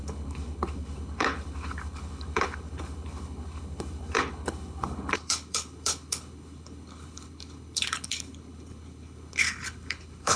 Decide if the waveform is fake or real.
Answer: fake